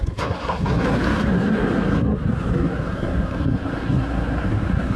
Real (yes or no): no